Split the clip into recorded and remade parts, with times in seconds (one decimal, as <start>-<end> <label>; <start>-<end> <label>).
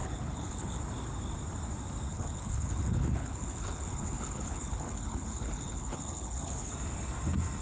0.0-0.8 remade; 0.8-2.1 recorded; 2.1-6.7 remade; 6.7-7.6 recorded